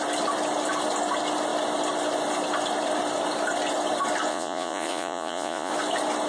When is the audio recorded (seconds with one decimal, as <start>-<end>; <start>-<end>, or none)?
0.0-4.3; 5.7-6.3